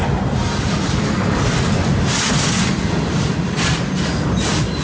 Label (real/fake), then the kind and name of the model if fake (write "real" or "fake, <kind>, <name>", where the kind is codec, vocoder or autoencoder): real